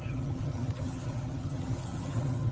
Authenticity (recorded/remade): remade